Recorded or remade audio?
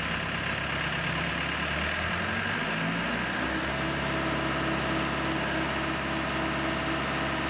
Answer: recorded